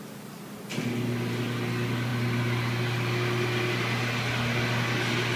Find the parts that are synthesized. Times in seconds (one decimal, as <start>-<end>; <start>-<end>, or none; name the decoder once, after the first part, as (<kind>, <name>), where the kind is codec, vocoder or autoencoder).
none